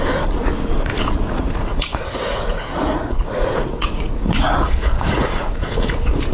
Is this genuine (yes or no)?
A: no